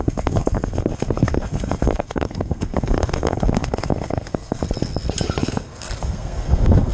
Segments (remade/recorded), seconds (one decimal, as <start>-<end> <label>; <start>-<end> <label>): 0.0-4.6 remade; 4.6-5.4 recorded; 5.4-6.9 remade